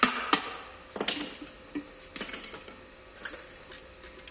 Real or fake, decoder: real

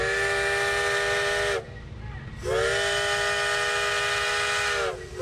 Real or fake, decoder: real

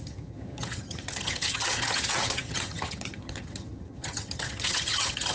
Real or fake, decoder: fake, vocoder, HiFi-GAN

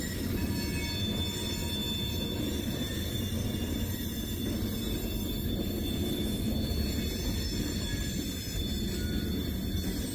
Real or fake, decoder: real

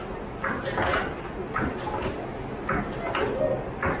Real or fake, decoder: real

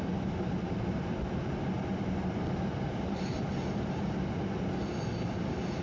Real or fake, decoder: real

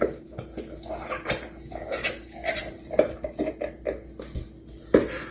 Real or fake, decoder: real